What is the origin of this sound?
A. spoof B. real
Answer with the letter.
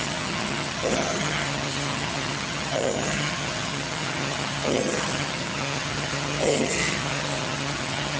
A